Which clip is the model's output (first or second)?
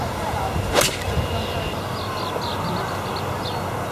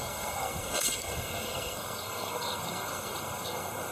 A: second